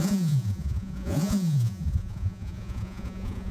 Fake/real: fake